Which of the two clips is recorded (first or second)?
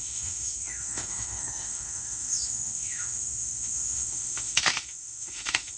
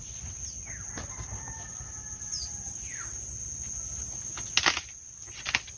second